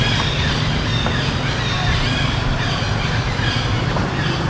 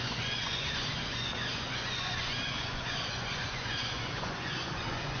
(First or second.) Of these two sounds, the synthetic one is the second